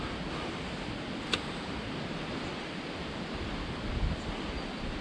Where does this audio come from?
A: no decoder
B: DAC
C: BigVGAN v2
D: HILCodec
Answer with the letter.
A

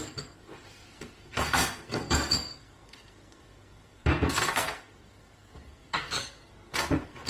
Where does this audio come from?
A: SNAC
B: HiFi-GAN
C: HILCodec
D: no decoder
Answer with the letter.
A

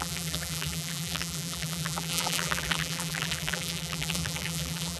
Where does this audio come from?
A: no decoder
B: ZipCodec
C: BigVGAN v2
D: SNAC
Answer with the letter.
C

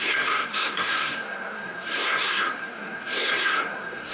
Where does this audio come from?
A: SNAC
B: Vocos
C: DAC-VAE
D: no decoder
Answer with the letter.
A